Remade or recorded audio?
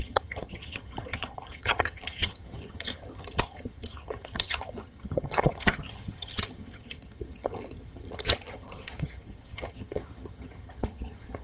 remade